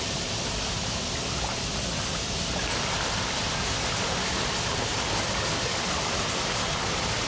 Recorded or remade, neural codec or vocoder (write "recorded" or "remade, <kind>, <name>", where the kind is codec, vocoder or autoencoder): remade, vocoder, BigVGAN v2